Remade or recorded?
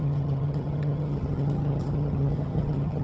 remade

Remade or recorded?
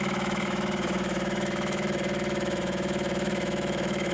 remade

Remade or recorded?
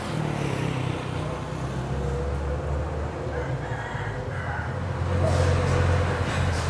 recorded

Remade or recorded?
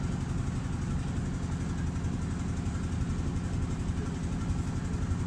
recorded